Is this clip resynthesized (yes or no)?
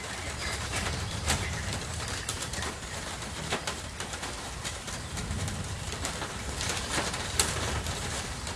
yes